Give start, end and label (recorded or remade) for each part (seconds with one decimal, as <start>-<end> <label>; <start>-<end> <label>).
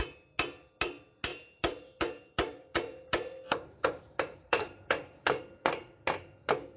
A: 0.0-1.3 recorded; 1.3-5.4 remade; 5.4-6.8 recorded